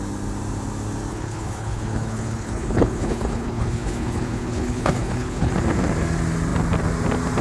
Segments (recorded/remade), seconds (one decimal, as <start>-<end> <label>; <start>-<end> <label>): 0.0-1.1 recorded; 1.1-5.5 remade; 5.5-7.4 recorded